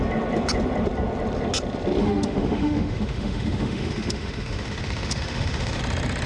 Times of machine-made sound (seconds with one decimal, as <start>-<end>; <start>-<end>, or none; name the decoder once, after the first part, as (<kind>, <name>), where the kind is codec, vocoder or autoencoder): 2.0-5.8 (autoencoder, DAC-VAE)